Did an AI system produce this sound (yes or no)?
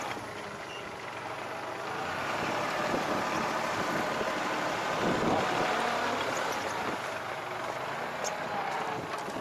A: no